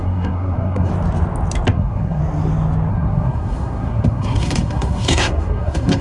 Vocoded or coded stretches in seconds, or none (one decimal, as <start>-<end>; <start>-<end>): 0.0-0.9; 1.7-2.2; 2.9-6.0